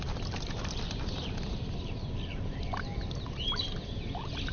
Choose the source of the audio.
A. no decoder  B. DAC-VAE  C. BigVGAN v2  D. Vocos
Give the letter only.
A